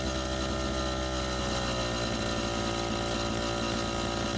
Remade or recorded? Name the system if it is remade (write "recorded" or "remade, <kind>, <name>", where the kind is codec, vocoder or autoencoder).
recorded